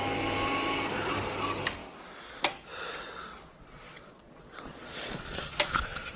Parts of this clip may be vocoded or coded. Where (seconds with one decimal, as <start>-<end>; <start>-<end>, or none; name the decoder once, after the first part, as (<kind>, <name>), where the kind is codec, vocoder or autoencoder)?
3.5-6.2 (vocoder, Vocos)

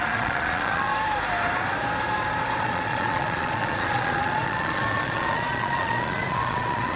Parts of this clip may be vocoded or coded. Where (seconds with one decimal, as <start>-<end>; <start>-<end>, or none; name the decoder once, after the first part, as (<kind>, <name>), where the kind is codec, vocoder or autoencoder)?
0.0-0.9 (vocoder, Vocos); 2.6-7.0

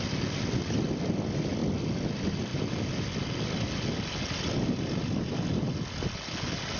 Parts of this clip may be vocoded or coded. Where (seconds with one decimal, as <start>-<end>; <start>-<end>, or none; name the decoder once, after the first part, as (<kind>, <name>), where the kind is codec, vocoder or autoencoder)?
none

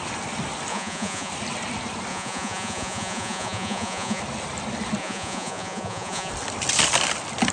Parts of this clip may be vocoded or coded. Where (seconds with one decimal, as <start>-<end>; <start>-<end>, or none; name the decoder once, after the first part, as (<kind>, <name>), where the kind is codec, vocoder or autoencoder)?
0.7-1.3 (vocoder, Vocos); 2.1-4.2; 5.0-6.3

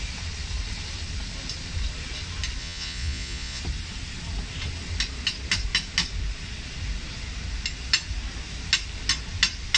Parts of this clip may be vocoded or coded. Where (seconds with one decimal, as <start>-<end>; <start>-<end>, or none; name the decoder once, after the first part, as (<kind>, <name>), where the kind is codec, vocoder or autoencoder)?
2.6-3.6 (vocoder, Vocos)

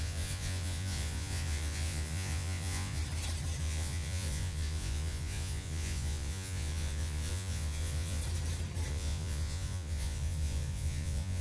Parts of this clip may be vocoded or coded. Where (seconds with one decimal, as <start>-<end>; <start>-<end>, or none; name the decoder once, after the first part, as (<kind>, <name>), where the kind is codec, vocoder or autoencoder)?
0.0-3.0 (vocoder, Vocos); 3.6-8.2; 8.9-11.4